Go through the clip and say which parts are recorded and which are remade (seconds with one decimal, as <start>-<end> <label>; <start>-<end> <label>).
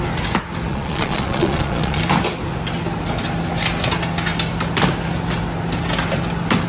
0.0-0.7 recorded; 0.7-2.0 remade; 2.0-6.7 recorded